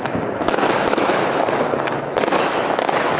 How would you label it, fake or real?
fake